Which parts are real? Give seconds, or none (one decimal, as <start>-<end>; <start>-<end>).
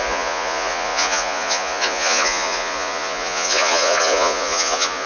none